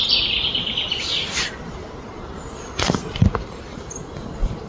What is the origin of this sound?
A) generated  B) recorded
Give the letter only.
B